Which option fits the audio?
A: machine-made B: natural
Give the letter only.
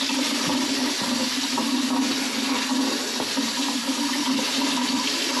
B